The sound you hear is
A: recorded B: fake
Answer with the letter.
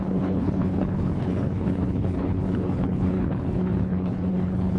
B